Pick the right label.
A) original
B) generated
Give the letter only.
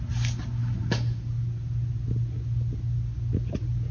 A